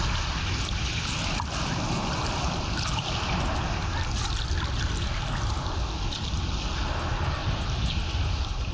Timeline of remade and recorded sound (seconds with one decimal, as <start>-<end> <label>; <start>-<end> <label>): 0.0-8.7 recorded